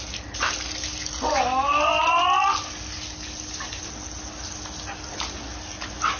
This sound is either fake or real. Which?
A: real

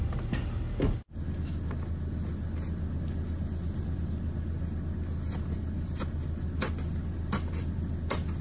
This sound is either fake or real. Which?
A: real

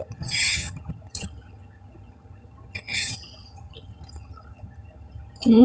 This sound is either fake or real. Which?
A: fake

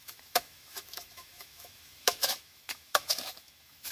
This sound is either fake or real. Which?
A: fake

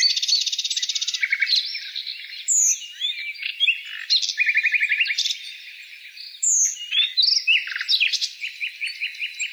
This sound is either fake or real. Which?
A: real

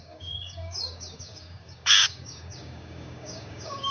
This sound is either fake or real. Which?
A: fake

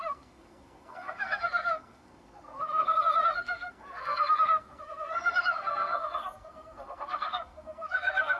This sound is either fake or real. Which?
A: fake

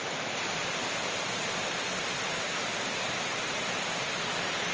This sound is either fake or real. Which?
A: fake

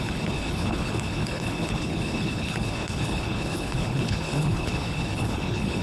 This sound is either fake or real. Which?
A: fake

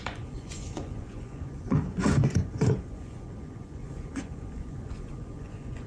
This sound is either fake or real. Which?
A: fake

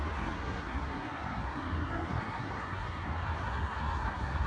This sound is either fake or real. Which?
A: fake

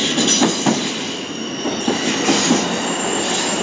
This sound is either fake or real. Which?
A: real